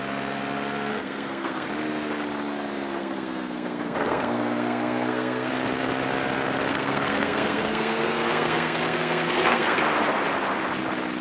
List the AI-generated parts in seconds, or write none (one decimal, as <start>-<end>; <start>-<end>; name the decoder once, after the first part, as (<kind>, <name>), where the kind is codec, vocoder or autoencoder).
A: 0.9-1.7 (codec, SNAC); 3.0-5.5; 6.7-9.8